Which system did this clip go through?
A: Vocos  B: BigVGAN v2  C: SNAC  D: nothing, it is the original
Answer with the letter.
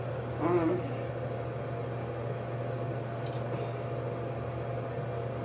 D